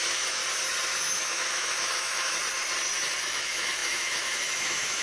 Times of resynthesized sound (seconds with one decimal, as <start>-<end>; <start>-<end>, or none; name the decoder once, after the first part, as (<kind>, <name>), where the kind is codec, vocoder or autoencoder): 0.0-0.4 (autoencoder, DAC-VAE); 1.0-2.4; 3.2-5.0

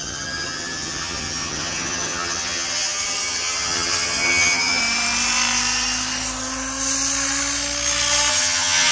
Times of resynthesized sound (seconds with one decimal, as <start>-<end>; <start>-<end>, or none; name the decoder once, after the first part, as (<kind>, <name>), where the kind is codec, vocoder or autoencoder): 0.0-4.8 (vocoder, HiFi-GAN); 8.3-8.9

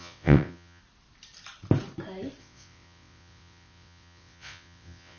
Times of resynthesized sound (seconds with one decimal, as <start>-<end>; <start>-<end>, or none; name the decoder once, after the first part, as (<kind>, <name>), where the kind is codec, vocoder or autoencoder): 0.0-0.8 (vocoder, WaveNeXt); 2.4-5.2